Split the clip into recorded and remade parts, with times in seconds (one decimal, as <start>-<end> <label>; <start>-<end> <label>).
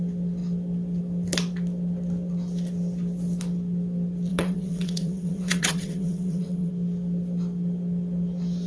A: 0.0-4.3 recorded; 4.3-6.7 remade; 6.7-8.7 recorded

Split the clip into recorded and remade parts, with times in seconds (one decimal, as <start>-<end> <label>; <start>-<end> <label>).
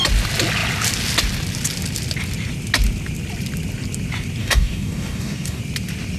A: 0.0-4.4 recorded; 4.4-5.6 remade; 5.6-6.2 recorded